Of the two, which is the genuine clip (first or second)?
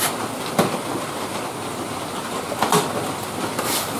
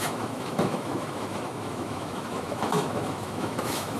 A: first